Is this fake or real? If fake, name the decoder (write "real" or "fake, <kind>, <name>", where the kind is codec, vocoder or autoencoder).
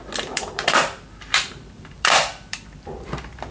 fake, vocoder, BigVGAN v2